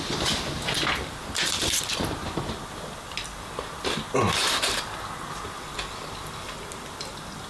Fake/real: real